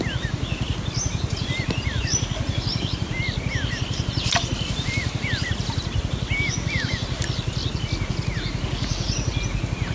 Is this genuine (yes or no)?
yes